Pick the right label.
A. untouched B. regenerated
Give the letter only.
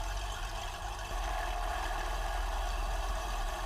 B